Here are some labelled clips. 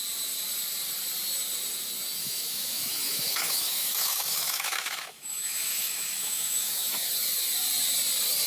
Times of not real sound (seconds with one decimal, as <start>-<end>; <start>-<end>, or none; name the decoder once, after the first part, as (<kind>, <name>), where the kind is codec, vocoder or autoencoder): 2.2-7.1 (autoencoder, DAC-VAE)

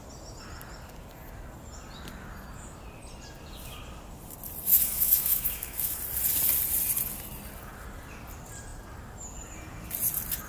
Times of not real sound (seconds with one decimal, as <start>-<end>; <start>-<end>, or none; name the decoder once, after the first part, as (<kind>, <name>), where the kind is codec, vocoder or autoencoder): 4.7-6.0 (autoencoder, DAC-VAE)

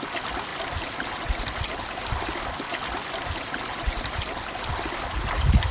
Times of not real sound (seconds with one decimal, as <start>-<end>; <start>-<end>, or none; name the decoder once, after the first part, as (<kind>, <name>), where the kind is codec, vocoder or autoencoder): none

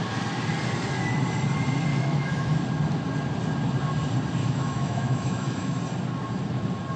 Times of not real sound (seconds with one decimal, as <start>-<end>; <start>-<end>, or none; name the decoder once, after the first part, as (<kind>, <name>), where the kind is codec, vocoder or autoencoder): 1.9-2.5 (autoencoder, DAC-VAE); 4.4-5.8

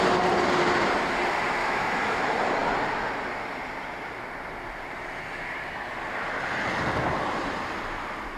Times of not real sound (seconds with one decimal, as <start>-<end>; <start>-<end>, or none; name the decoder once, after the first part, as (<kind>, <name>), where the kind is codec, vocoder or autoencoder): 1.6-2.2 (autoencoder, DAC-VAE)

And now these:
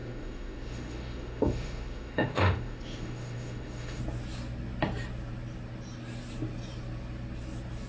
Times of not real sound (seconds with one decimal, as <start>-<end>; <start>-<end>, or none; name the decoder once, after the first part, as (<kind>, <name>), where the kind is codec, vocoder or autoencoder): 0.0-4.0 (autoencoder, DAC-VAE)

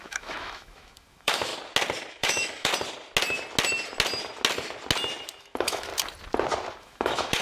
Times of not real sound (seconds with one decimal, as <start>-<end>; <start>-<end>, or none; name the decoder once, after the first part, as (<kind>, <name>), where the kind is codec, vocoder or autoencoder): 0.0-1.5 (autoencoder, DAC-VAE); 2.1-2.7; 5.4-5.9; 6.8-7.4

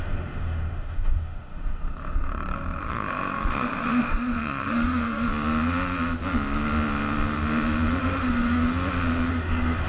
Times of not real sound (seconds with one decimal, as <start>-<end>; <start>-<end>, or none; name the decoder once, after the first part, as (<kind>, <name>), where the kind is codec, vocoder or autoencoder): 0.0-5.3 (autoencoder, DAC-VAE); 8.0-8.6; 9.3-9.9